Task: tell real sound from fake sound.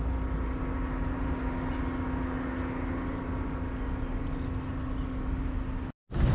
real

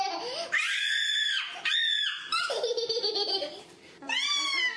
fake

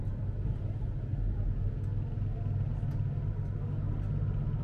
real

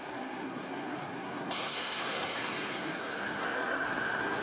fake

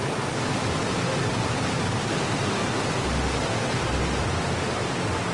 real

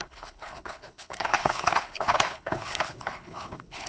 fake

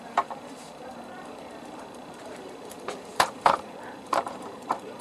fake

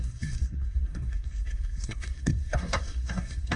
fake